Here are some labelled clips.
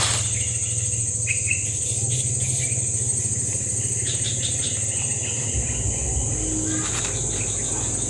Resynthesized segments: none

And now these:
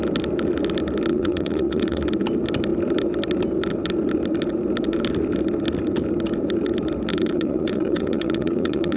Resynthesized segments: 1.1-2.0; 7.1-9.0

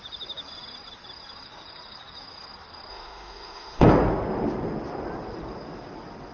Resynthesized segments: 2.9-3.9

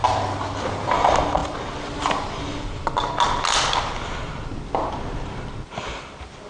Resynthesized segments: none

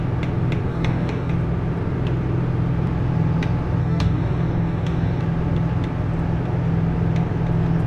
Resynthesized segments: 0.7-1.3; 3.8-5.2